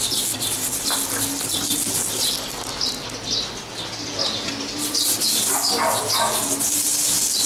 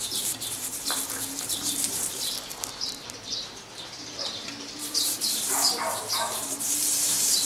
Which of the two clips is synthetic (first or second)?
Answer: second